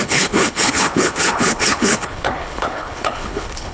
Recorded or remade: remade